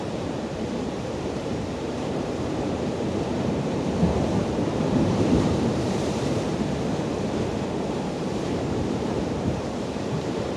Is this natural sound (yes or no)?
no